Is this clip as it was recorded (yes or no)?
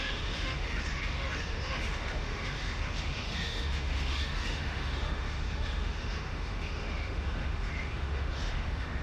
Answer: no